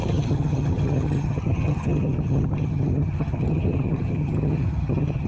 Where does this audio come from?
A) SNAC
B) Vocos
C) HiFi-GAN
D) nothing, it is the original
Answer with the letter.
C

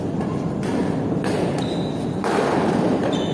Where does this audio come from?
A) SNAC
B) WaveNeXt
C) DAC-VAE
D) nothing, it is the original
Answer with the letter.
D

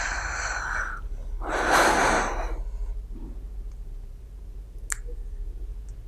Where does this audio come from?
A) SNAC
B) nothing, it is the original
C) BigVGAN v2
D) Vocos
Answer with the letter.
B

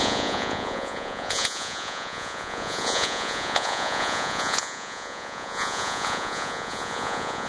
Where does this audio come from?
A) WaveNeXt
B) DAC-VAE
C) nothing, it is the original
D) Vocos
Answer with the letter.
D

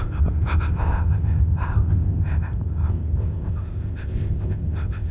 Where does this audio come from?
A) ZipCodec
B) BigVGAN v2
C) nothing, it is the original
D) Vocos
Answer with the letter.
A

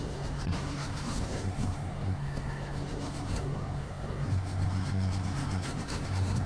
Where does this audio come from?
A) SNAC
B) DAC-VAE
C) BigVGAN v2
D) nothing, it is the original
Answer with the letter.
A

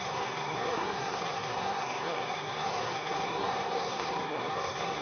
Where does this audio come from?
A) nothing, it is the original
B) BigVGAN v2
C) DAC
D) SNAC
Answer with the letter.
D